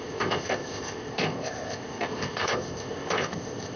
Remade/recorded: remade